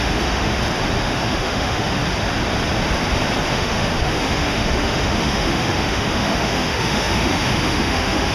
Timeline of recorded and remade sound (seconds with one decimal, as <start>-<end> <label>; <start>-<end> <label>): 0.0-0.5 remade; 0.5-1.0 recorded; 1.0-2.0 remade; 2.0-3.5 recorded; 3.5-8.3 remade